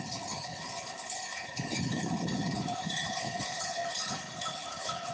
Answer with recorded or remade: remade